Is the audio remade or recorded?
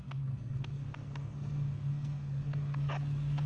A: remade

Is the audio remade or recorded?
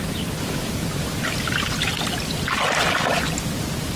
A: recorded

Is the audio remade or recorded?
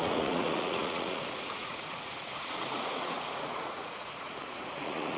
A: remade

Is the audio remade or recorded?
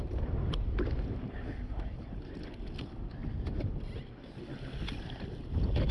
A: recorded